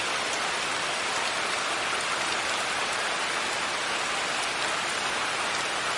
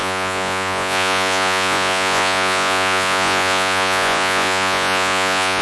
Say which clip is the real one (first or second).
first